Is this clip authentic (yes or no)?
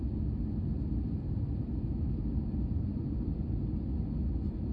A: yes